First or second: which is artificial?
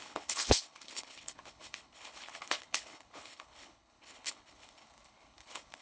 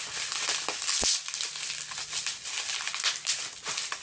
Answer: first